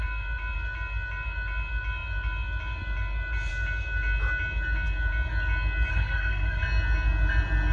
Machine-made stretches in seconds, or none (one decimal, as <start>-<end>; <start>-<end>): 5.9-6.6